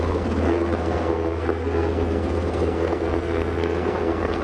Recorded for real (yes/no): no